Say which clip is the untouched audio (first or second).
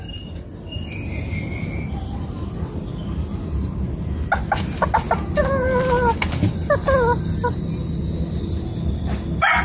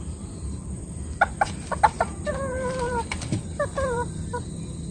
first